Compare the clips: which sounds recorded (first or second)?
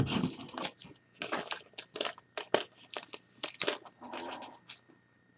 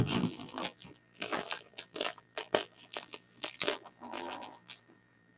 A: first